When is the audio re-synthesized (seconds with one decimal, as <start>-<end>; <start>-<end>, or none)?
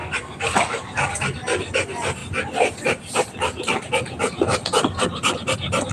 0.0-1.1